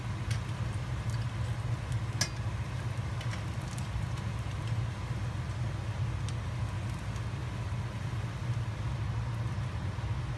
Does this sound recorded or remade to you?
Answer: recorded